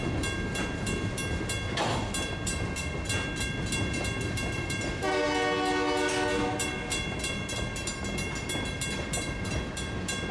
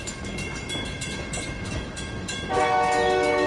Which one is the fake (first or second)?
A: second